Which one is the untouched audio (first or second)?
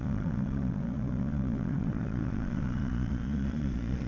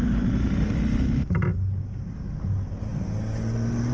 second